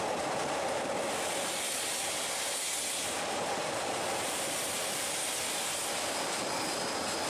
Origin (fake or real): real